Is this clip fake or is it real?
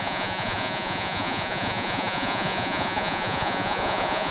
fake